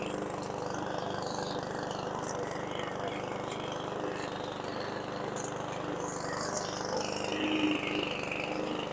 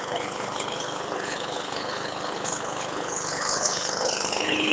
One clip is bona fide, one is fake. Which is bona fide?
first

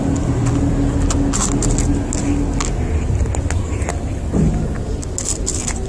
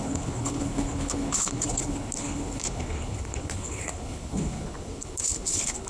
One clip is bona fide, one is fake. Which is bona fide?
first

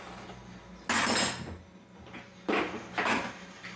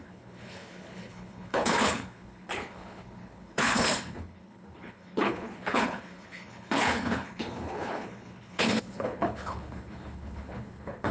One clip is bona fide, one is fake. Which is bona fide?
first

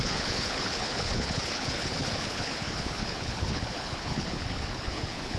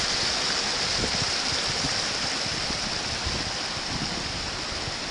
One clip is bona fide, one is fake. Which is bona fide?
second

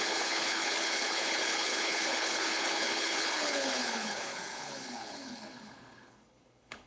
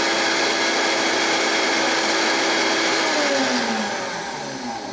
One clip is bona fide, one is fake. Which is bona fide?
second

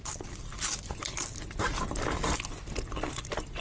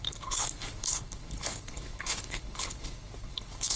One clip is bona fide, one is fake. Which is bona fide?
first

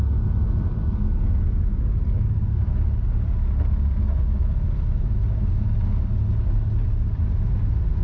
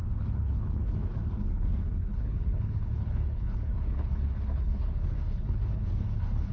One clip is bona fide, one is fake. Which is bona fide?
first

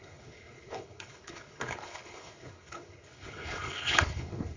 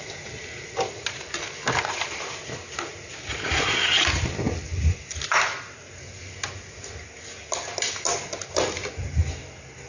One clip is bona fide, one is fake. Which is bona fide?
second